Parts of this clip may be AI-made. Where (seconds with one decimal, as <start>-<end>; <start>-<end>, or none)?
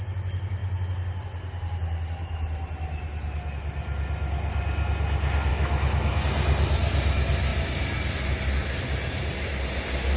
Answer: 5.5-6.2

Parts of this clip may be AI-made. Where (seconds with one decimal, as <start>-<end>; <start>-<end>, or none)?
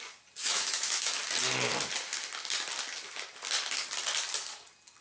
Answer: 0.4-1.2